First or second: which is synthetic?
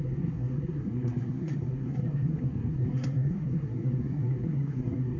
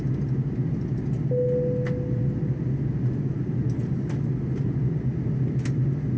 first